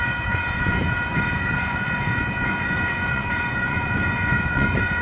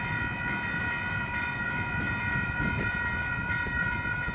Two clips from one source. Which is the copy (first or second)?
first